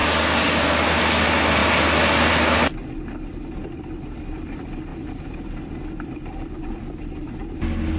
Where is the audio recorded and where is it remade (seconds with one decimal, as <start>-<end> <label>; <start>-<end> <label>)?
0.0-1.0 remade; 1.0-8.0 recorded